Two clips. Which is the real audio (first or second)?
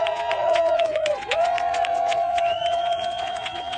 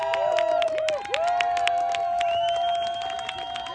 second